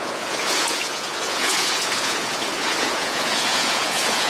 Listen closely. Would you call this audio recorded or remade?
remade